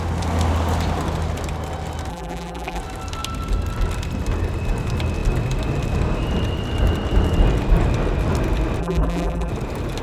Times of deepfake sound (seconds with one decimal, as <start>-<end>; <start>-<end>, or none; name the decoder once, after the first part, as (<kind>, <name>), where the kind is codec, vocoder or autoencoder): 2.1-2.8 (vocoder, BigVGAN v2); 8.8-9.5